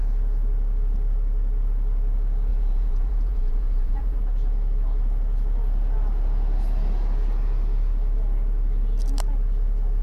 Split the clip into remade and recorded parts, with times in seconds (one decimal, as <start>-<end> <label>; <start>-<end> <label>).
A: 0.0-2.5 recorded; 2.5-4.2 remade; 4.2-10.0 recorded